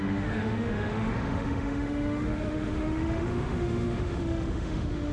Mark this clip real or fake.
fake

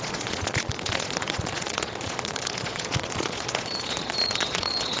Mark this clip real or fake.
fake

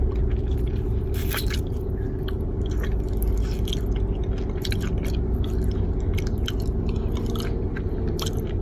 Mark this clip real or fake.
real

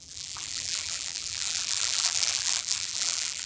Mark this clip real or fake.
fake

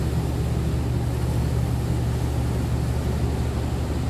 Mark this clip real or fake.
real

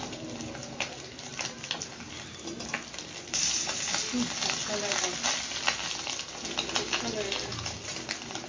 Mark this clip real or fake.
real